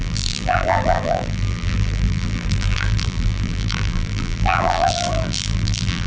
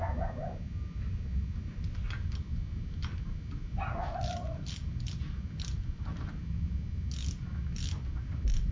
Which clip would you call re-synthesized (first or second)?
first